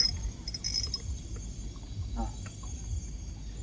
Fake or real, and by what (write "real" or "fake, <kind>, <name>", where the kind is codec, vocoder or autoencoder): real